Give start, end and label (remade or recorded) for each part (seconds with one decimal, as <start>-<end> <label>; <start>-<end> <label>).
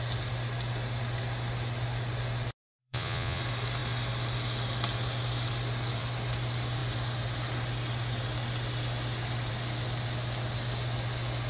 0.0-2.8 recorded; 2.8-3.4 remade; 3.4-11.5 recorded